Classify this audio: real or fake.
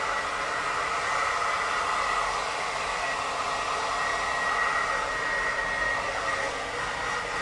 real